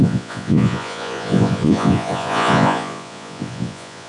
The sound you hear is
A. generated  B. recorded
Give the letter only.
A